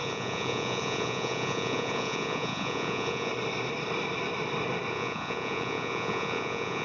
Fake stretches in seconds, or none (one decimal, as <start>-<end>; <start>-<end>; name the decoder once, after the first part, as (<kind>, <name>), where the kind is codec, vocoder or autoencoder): 0.0-3.3 (vocoder, Vocos); 4.9-6.8